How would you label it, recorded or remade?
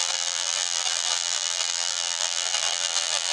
remade